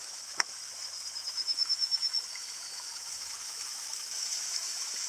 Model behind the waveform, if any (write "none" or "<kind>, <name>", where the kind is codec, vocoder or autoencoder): autoencoder, DAC-VAE